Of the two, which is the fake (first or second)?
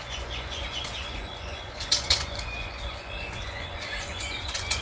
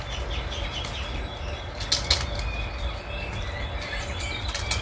first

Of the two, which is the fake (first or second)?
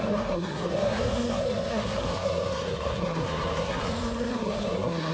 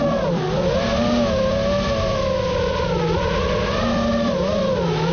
first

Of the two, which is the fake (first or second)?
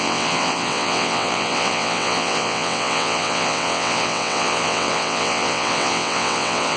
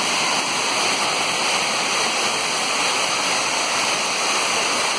first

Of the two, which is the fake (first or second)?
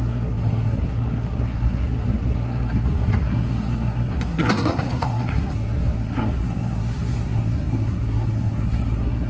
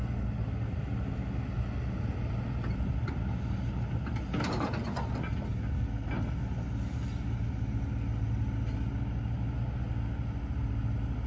first